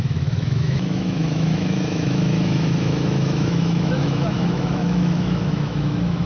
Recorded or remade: remade